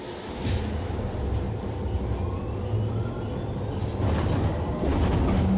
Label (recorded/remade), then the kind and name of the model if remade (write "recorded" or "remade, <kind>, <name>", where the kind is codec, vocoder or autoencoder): recorded